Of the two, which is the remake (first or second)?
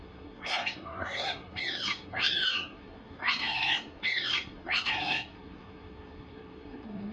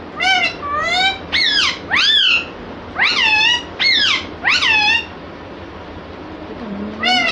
first